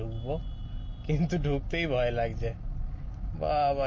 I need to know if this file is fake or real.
real